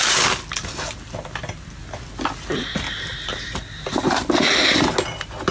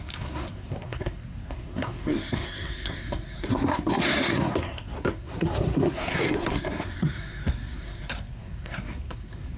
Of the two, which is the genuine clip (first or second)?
first